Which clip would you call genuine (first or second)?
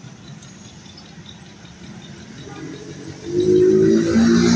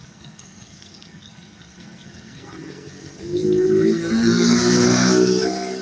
first